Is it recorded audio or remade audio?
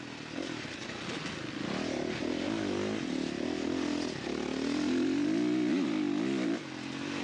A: recorded